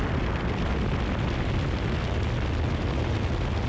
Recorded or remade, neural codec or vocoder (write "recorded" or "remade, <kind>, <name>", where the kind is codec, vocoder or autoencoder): recorded